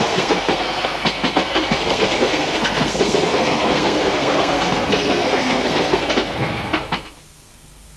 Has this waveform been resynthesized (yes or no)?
yes